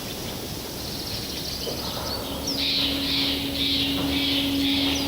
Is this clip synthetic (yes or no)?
no